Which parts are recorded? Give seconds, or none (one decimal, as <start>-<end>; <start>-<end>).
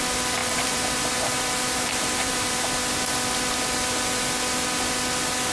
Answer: 0.0-0.4; 2.7-5.5